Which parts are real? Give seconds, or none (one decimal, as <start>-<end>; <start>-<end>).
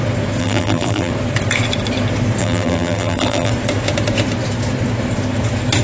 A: 0.0-0.4; 1.1-2.4; 3.5-5.8